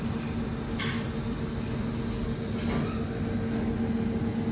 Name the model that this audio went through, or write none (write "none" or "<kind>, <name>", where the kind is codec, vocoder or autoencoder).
none